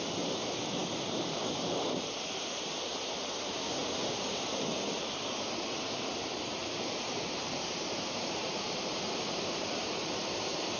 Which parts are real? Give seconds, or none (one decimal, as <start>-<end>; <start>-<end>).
3.8-4.9